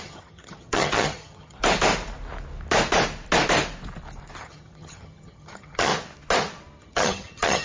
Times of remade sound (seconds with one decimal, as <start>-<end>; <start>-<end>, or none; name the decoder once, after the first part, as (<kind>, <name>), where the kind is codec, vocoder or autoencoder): 0.0-1.6 (vocoder, HiFi-GAN); 4.4-5.9; 6.8-7.6